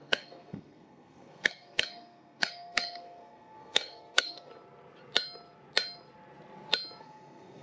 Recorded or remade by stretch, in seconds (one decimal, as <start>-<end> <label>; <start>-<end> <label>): 0.0-4.5 remade; 4.5-7.0 recorded; 7.0-7.6 remade

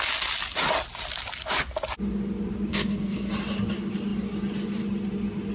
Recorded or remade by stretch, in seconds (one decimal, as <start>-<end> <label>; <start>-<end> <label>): 0.0-2.7 recorded; 2.7-3.3 remade; 3.3-5.5 recorded

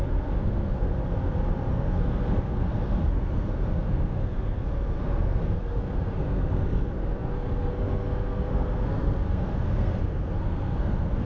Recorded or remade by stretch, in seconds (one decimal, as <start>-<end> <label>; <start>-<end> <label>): 0.0-0.9 remade; 0.9-1.7 recorded; 1.7-11.2 remade

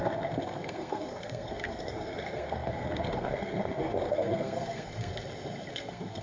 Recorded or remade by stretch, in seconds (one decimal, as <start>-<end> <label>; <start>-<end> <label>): 0.0-5.1 remade; 5.1-5.7 recorded; 5.7-6.2 remade

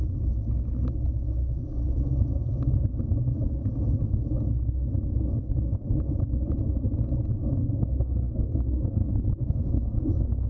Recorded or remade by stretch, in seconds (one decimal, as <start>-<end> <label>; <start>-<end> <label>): 0.0-7.6 recorded; 7.6-10.5 remade

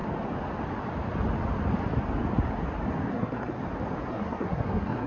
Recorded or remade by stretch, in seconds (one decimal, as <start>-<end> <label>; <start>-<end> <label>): 0.0-3.1 recorded; 3.1-3.6 remade; 3.6-4.1 recorded; 4.1-5.1 remade

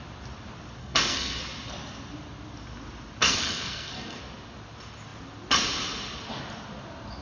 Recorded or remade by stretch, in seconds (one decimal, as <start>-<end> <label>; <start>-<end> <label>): 0.0-0.8 recorded; 0.8-1.4 remade; 1.4-3.2 recorded; 3.2-4.2 remade; 4.2-7.2 recorded

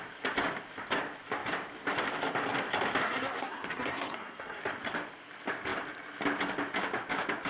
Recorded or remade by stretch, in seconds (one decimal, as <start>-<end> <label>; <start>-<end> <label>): 0.0-3.0 recorded; 3.0-4.6 remade; 4.6-7.5 recorded